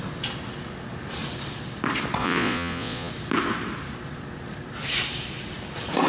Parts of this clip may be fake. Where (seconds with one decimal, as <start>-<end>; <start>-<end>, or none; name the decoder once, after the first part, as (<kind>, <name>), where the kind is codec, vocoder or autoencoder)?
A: 2.2-3.1 (vocoder, Vocos)